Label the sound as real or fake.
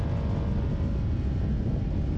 real